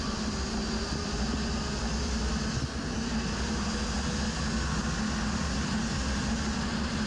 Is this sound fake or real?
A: real